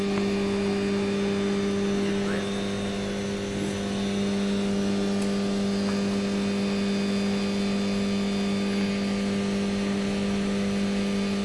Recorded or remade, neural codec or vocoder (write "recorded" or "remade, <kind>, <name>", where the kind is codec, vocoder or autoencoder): recorded